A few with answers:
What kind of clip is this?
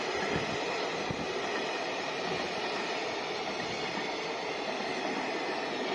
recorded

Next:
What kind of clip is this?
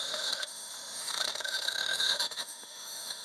remade